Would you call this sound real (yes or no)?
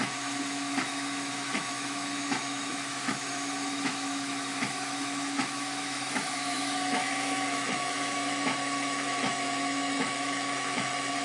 no